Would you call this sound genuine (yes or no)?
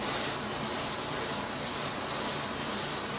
yes